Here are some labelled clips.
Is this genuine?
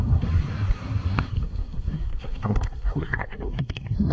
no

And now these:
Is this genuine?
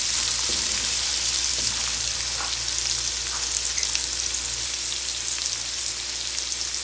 yes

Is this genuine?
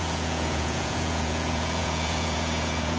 no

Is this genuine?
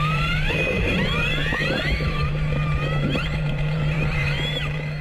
no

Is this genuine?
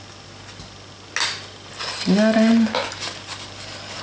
yes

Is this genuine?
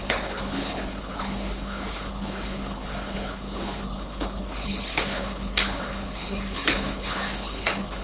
no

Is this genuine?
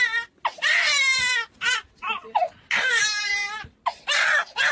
yes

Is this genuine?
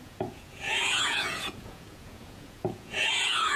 no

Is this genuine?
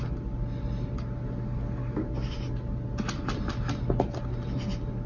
yes